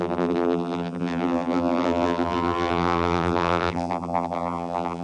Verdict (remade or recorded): remade